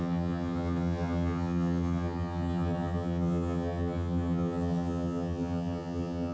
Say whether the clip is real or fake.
fake